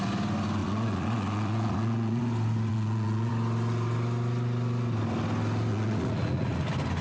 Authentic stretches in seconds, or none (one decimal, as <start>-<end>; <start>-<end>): 0.0-0.6; 2.2-2.7; 3.3-5.7; 6.6-7.0